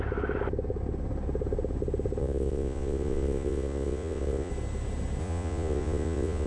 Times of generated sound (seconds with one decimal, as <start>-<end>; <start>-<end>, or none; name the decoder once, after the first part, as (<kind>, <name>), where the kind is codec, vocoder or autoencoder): 2.2-4.5 (vocoder, Vocos); 5.2-6.5